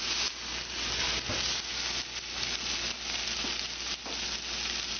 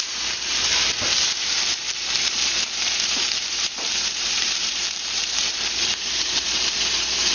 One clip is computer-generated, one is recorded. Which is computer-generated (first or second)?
second